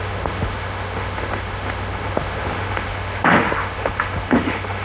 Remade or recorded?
remade